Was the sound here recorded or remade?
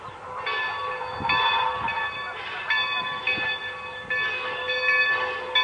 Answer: recorded